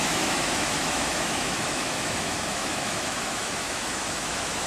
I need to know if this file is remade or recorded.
remade